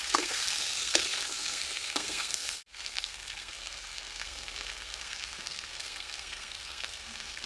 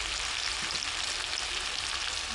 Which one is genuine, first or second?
second